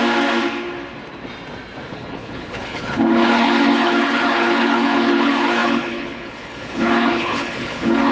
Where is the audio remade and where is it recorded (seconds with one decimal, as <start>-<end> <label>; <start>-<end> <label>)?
0.0-1.9 recorded; 1.9-8.1 remade